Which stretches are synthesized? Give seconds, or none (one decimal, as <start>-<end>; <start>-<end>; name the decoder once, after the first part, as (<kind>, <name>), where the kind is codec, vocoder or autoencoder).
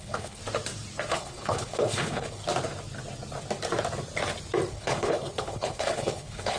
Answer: 0.0-0.4 (codec, HILCodec); 1.1-2.4; 4.7-6.6